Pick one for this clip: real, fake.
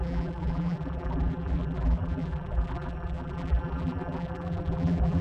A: fake